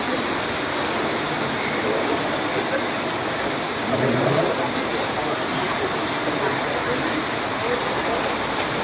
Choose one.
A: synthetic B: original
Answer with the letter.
B